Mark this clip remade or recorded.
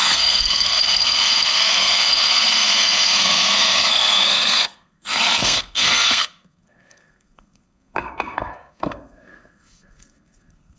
remade